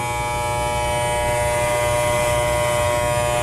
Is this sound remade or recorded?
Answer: recorded